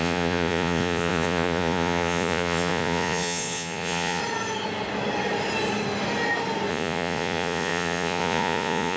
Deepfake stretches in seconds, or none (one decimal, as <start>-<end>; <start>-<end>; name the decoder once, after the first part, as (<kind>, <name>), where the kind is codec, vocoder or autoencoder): 0.0-4.2 (vocoder, Vocos); 6.7-9.0